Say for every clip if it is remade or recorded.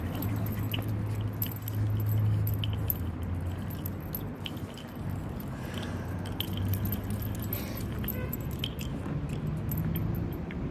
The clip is recorded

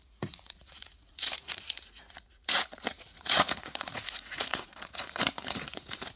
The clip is remade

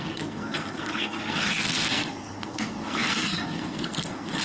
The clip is remade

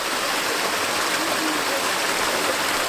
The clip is recorded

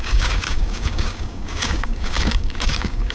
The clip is remade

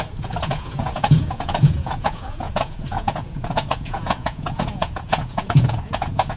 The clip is remade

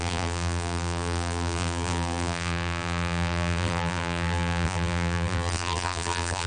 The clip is remade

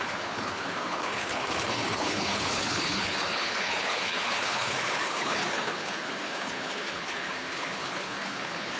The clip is remade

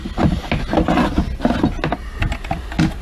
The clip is recorded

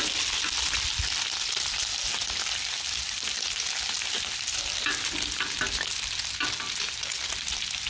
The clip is recorded